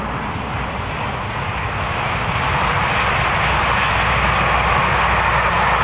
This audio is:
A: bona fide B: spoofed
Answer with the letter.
A